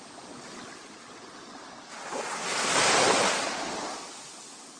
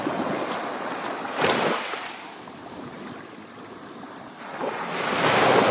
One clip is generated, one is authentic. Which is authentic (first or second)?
first